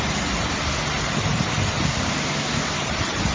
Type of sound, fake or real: real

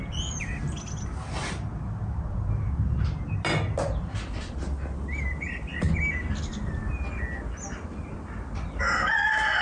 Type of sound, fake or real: real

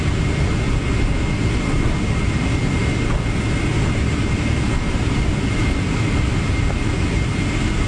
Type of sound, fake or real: real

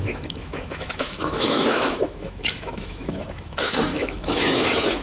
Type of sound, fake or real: fake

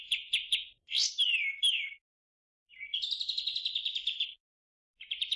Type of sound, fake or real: real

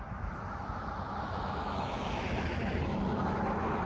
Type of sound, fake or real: fake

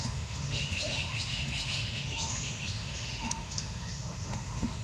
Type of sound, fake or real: fake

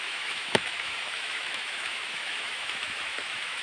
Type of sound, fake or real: fake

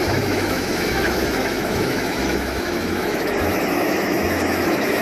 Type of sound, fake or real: fake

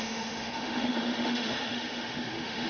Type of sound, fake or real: fake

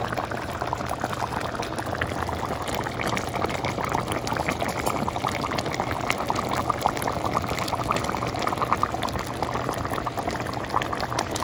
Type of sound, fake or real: real